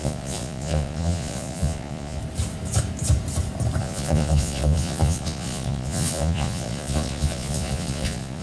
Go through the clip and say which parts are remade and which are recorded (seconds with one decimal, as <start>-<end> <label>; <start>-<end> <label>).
0.0-2.2 remade; 2.2-3.8 recorded; 3.8-8.4 remade